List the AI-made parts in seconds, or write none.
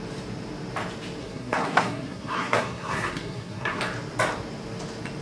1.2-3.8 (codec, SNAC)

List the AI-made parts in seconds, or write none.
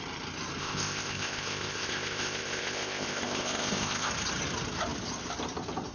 0.6-4.1 (codec, ZipCodec)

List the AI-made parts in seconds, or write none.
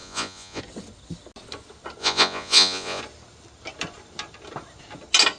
0.0-0.6 (vocoder, Vocos); 2.0-3.0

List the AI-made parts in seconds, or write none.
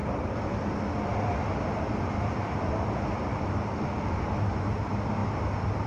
3.3-4.2 (autoencoder, DAC-VAE)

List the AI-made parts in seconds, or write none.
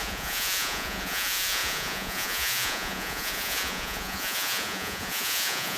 0.0-5.8 (vocoder, Vocos)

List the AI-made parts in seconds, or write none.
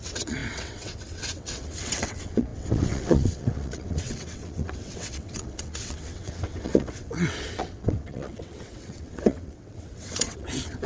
0.0-10.9 (vocoder, WaveNeXt)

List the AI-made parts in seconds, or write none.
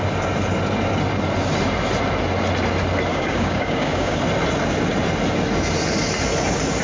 3.1-4.2 (codec, DAC)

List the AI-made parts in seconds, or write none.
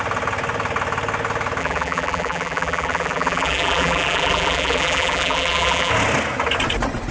1.6-5.9 (vocoder, BigVGAN v2)